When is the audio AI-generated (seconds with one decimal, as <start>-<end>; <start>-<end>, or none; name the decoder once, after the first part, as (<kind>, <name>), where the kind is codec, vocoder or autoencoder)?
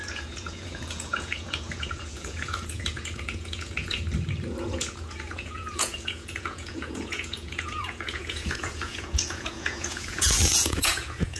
0.0-4.0 (vocoder, Vocos); 4.5-11.4